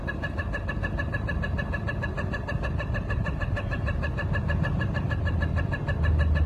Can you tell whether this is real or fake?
real